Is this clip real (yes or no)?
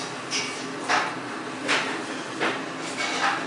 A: yes